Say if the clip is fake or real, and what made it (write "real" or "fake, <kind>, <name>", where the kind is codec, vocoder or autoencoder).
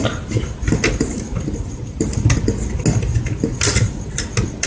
real